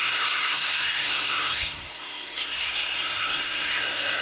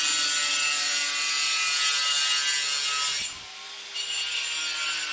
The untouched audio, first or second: second